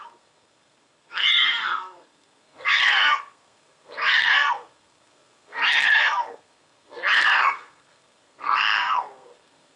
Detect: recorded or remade remade